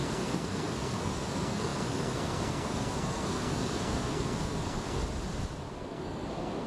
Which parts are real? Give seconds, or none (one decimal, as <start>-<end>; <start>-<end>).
5.0-5.7